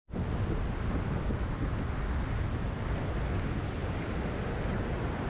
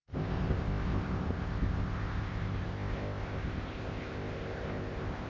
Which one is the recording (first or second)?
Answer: first